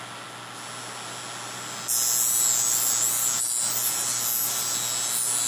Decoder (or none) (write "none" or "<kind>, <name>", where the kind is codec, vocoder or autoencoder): none